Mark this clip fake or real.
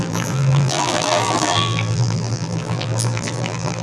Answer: fake